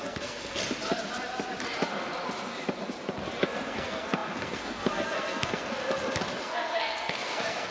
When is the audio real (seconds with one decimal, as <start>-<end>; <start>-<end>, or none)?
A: 0.6-3.4; 5.8-6.4